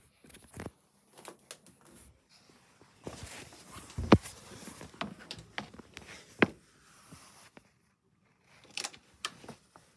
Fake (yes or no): no